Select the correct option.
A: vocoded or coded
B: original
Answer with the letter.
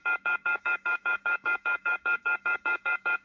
A